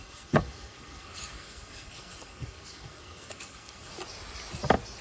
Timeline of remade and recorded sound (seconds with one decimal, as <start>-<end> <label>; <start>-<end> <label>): 0.0-3.9 remade; 3.9-5.0 recorded